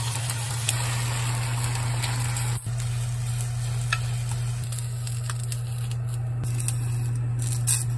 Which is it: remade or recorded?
recorded